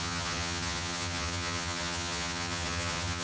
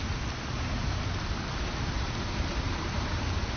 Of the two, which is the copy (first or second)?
first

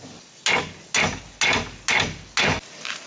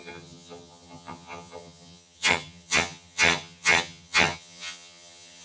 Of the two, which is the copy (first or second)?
second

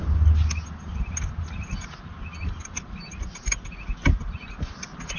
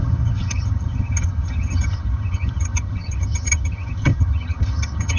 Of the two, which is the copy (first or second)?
second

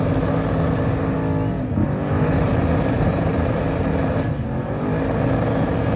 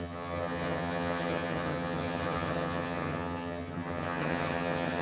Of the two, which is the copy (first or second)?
second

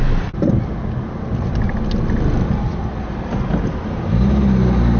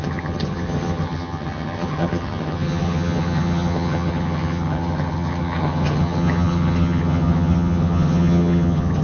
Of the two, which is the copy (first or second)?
second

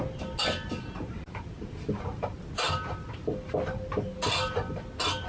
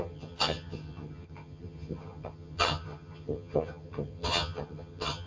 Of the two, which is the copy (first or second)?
second